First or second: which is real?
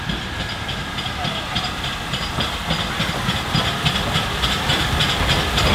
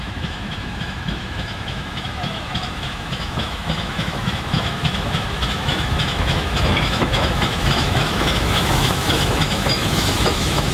first